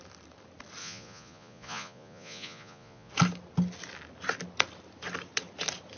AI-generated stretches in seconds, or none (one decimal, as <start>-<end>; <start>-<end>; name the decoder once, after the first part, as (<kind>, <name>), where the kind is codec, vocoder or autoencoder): 0.8-3.1 (vocoder, Vocos)